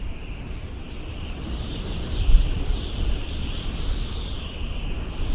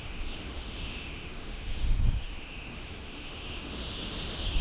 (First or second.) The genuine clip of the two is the first